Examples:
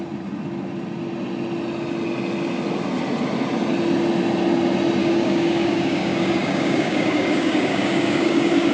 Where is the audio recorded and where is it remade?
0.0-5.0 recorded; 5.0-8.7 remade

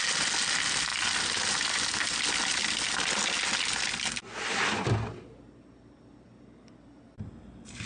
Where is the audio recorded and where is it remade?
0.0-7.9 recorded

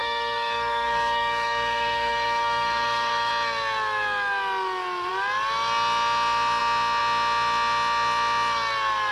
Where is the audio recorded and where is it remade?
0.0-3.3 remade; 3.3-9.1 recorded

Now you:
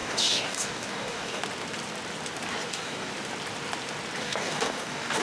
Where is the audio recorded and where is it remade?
0.0-1.4 remade; 1.4-2.7 recorded; 2.7-3.1 remade; 3.1-4.2 recorded; 4.2-5.2 remade

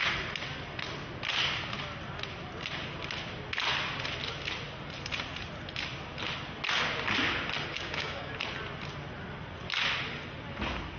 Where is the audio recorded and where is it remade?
0.0-7.7 recorded; 7.7-8.3 remade; 8.3-11.0 recorded